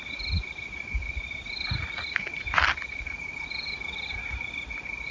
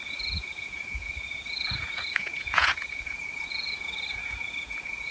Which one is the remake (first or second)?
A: second